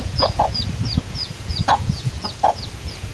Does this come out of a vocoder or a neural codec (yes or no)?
yes